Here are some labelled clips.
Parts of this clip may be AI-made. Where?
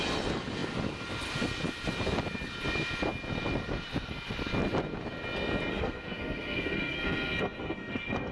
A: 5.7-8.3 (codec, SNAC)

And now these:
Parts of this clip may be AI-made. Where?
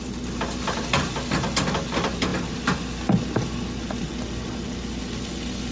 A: none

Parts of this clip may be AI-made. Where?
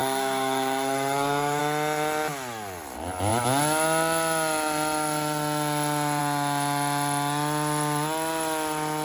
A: 0.0-1.6 (codec, SNAC)